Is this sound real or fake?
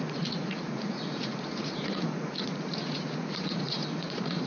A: fake